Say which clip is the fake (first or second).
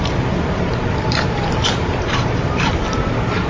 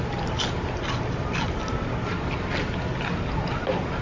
first